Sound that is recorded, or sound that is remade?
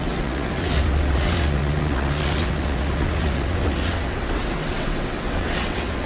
remade